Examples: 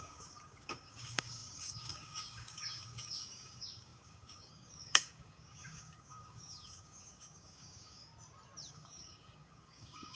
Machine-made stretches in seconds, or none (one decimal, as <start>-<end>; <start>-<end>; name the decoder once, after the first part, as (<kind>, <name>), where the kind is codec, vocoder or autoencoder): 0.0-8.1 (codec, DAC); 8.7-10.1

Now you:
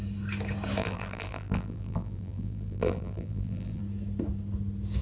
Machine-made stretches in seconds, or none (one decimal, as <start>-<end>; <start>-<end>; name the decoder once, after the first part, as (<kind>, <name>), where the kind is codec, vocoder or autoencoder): 0.8-3.8 (vocoder, BigVGAN v2)

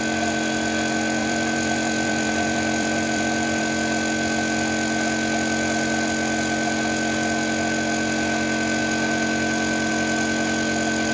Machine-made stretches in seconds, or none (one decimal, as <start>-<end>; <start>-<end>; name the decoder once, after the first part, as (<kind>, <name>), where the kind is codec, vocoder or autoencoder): 1.2-3.6 (vocoder, BigVGAN v2)

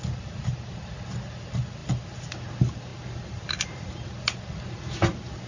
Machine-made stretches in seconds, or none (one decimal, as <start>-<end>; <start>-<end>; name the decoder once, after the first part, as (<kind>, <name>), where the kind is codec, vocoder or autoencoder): none